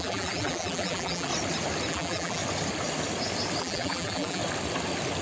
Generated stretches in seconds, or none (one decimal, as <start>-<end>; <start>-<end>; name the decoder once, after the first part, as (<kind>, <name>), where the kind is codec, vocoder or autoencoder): 0.0-1.3 (vocoder, BigVGAN v2); 1.9-2.4; 3.6-4.4